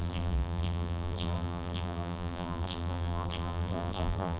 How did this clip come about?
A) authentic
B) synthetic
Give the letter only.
B